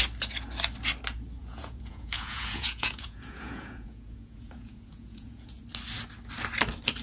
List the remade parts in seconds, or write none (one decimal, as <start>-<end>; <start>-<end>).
1.4-5.6